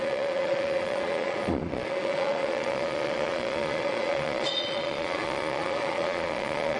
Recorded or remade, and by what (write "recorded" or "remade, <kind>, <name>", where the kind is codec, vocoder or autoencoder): remade, vocoder, Vocos